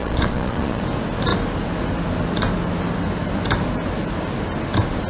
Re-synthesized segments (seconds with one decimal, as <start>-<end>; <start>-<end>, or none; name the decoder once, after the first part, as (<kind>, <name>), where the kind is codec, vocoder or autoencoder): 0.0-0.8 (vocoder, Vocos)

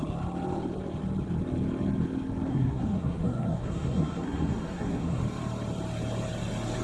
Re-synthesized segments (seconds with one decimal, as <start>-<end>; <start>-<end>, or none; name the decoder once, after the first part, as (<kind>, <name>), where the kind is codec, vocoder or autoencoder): 2.5-5.2 (codec, SNAC)

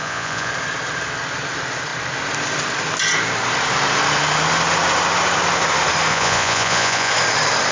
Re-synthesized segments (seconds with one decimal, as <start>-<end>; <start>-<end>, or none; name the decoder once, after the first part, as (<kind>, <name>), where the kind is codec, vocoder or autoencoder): 0.0-0.5 (vocoder, Vocos); 6.1-7.1